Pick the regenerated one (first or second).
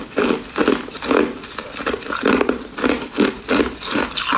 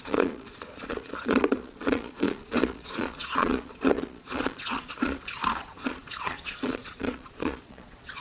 second